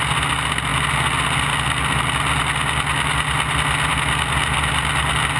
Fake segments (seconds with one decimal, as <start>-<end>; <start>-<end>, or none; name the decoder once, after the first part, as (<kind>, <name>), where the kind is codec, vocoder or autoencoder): none